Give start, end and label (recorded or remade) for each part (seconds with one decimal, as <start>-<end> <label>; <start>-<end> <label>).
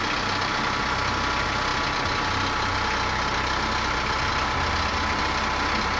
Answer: 0.0-6.0 recorded